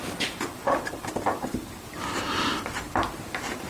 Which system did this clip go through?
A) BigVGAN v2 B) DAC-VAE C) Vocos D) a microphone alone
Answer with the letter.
A